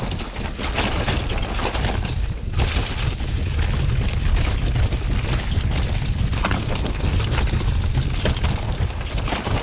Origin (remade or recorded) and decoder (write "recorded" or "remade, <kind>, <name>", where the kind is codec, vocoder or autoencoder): recorded